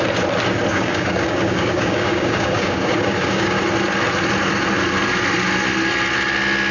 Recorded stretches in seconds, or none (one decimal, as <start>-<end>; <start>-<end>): 0.0-0.7; 3.6-6.7

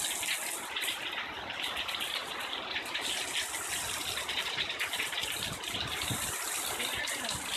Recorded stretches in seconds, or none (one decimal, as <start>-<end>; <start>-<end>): 0.0-7.6

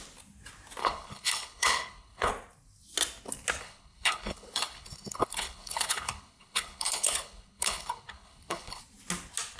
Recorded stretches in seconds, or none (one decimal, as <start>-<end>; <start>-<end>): 0.0-0.8; 2.3-3.6; 8.8-9.6

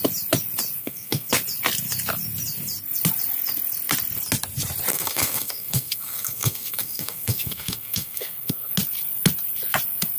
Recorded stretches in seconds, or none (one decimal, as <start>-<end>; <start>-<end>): 0.0-0.8; 1.3-4.9; 8.7-10.2

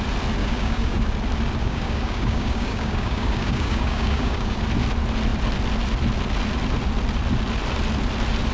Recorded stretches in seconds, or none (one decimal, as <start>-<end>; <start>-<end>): 0.0-0.4; 1.0-1.6; 4.6-8.5

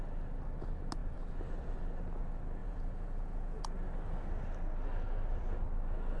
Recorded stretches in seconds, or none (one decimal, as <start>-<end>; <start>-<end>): 0.0-2.6; 3.6-6.2

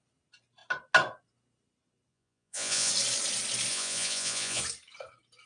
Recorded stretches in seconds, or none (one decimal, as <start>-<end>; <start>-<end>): 0.0-2.1; 2.9-3.7; 4.6-5.5